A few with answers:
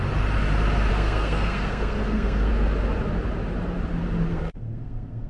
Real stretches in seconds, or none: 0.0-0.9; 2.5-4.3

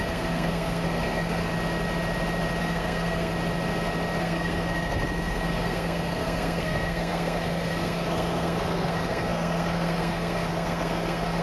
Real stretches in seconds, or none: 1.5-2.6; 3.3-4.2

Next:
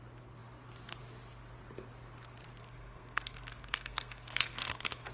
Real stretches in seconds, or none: 0.0-2.6